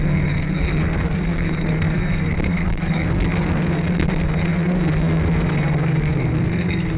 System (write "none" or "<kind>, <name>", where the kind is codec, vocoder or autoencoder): codec, SNAC